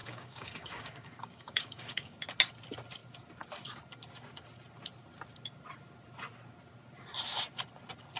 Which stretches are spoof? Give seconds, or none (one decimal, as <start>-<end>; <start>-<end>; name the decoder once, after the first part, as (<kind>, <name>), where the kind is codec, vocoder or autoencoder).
0.0-2.2 (codec, DAC)